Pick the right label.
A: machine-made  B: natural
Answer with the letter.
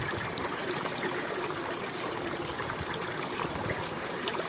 A